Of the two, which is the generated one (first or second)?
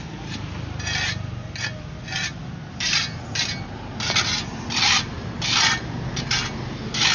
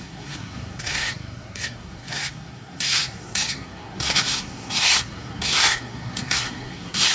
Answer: second